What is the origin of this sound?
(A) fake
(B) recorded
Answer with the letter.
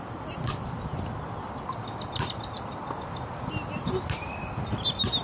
B